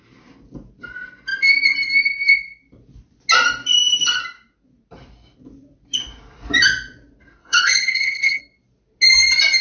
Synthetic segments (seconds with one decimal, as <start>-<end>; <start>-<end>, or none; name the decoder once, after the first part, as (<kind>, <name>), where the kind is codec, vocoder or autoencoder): 7.4-8.4 (codec, HILCodec)

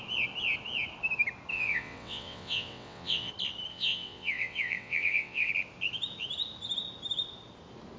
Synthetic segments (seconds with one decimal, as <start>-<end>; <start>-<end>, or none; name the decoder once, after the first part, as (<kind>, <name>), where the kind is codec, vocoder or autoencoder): 1.5-3.3 (vocoder, WaveNeXt); 3.7-5.5

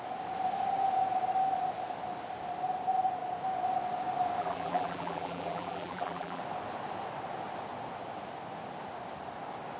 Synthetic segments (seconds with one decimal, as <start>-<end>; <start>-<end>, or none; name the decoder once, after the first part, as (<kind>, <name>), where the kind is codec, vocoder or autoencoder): 4.4-6.4 (vocoder, BigVGAN v2)

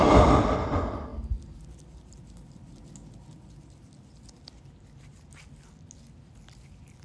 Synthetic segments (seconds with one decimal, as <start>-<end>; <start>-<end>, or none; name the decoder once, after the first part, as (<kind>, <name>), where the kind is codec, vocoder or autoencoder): none

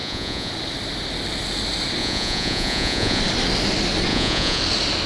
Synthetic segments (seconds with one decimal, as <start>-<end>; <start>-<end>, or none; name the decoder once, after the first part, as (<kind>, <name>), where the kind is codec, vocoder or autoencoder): 0.0-0.5 (vocoder, Vocos); 2.0-3.2; 4.1-4.6